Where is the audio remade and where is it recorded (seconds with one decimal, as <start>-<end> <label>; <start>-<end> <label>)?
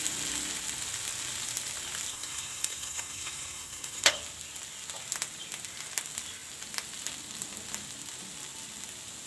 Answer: 0.0-2.1 recorded; 2.1-4.2 remade; 4.2-9.3 recorded